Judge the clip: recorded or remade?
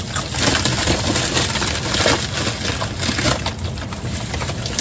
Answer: recorded